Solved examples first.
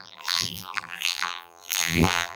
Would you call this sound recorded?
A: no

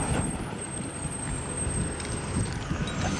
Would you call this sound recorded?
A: yes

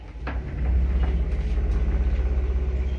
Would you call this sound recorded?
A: yes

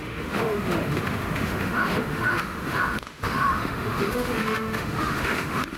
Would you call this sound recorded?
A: no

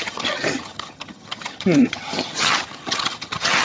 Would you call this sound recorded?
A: no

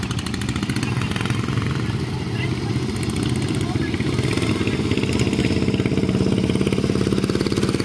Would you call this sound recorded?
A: yes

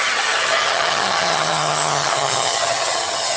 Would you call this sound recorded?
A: no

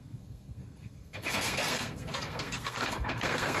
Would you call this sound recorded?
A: no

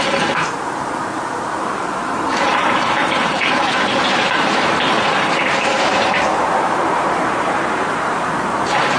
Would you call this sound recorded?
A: no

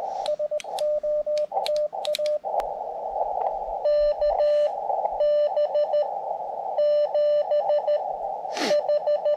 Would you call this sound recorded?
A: yes